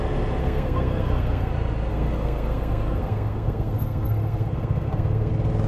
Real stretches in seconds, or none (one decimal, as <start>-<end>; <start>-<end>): 0.0-0.4; 1.5-1.9; 5.3-5.7